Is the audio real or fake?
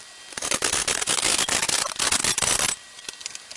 real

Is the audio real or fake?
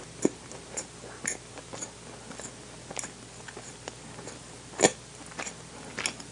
real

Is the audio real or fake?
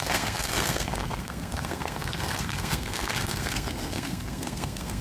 fake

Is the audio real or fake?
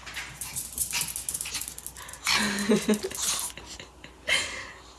real